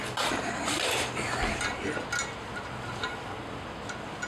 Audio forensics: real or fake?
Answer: real